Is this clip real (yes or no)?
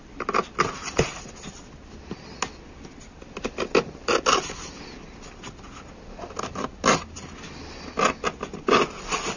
yes